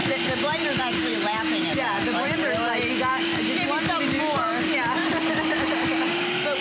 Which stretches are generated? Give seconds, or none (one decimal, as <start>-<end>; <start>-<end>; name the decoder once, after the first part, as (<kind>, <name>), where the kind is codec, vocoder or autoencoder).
none